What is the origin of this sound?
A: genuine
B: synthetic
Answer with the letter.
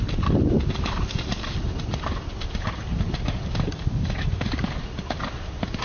A